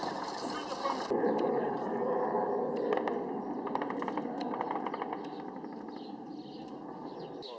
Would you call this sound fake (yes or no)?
no